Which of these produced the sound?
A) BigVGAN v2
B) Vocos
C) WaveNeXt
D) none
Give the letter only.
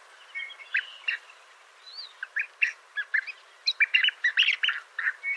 D